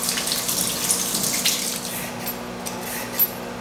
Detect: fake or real real